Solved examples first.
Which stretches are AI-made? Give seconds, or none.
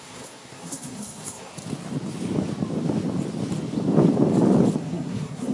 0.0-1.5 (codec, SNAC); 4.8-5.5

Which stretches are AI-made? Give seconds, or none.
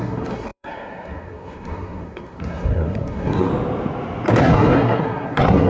0.0-3.5 (codec, SNAC); 4.4-5.7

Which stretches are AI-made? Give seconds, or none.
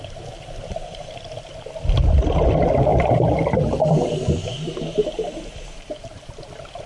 2.0-2.5 (vocoder, BigVGAN v2); 2.9-6.4